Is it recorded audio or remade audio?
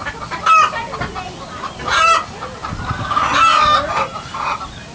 recorded